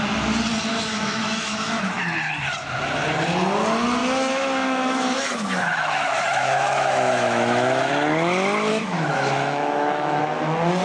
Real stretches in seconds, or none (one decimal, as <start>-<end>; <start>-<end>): 0.0-0.7; 2.0-4.0; 7.9-8.7; 10.2-10.8